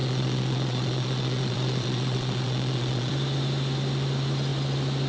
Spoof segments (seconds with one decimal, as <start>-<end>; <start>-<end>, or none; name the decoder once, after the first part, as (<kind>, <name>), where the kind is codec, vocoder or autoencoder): 0.0-3.1 (vocoder, Vocos)